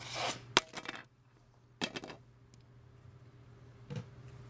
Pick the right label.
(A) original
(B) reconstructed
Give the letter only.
A